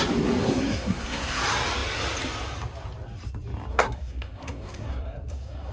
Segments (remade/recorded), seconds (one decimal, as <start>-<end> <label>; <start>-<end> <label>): 0.0-0.4 recorded; 0.4-1.4 remade; 1.4-3.7 recorded; 3.7-5.7 remade